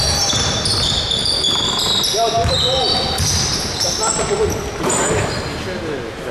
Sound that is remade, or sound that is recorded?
recorded